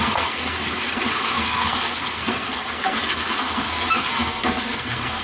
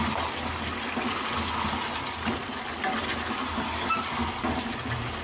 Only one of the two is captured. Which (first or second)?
second